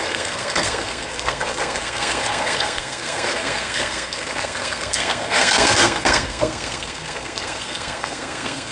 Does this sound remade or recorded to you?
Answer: remade